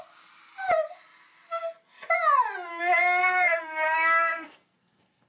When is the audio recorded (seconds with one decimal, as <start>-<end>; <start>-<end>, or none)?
0.0-3.2